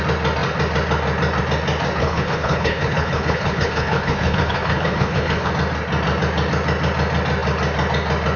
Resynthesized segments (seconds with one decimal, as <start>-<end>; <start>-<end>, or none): 2.0-5.5